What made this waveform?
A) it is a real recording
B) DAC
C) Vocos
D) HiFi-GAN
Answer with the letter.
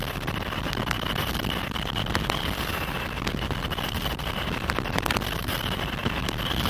A